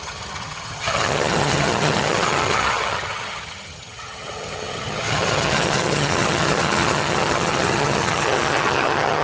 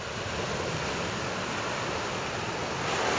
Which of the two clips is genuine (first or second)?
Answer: second